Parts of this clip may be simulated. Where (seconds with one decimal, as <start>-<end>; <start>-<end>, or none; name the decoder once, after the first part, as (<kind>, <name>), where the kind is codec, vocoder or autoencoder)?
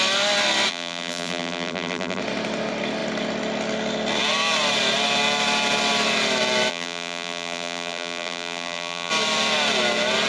0.7-2.2 (vocoder, BigVGAN v2); 6.7-9.1